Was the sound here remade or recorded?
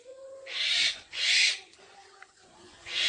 remade